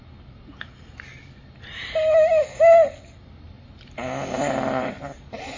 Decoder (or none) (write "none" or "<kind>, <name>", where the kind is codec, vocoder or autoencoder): none